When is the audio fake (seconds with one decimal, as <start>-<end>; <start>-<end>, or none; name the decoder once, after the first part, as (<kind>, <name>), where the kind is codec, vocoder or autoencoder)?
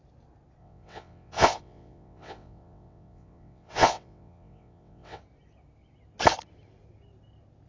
0.6-5.2 (vocoder, WaveNeXt)